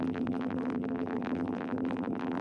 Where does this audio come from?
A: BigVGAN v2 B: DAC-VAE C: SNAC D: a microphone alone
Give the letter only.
A